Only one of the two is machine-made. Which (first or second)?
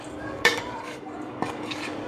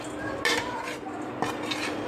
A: first